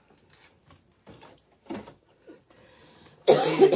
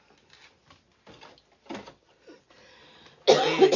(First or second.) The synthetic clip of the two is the first